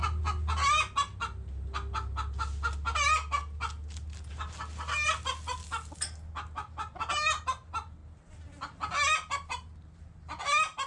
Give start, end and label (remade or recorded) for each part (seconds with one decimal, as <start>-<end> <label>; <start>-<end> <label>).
0.0-10.9 recorded